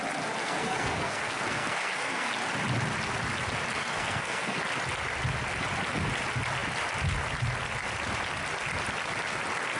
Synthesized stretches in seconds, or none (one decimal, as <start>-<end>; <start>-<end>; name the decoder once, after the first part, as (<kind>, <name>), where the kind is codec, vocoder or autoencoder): 0.4-2.3 (codec, SNAC); 3.8-4.6

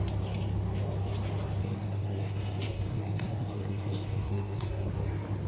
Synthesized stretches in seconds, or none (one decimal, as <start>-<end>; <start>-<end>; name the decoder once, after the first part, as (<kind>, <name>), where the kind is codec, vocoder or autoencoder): 1.6-4.9 (codec, SNAC)

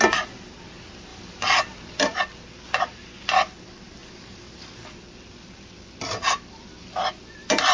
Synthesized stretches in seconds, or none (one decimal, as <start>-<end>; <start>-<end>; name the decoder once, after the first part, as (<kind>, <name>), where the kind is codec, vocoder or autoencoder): 1.1-2.2 (vocoder, BigVGAN v2)

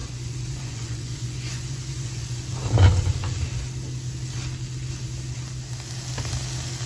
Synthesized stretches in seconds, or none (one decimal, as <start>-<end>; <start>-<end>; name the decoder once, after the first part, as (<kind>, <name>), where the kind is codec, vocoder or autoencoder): 0.0-2.4 (vocoder, Vocos)